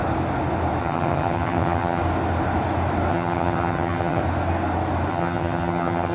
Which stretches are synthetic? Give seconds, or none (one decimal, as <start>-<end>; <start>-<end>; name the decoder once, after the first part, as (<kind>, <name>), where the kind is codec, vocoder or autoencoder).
0.8-2.0 (vocoder, HiFi-GAN); 3.1-4.2; 5.1-6.1